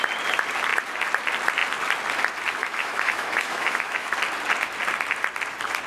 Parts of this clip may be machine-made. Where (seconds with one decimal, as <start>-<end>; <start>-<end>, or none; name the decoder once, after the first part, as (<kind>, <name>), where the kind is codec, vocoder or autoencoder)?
2.6-4.1 (autoencoder, DAC-VAE)